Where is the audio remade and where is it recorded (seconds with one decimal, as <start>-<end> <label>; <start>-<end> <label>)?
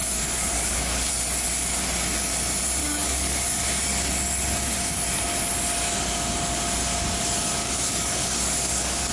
0.0-1.1 remade; 1.1-2.8 recorded; 2.8-4.1 remade; 4.1-7.6 recorded; 7.6-9.1 remade